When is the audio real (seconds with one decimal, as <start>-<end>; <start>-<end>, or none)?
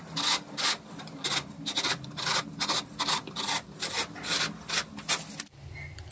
0.0-6.1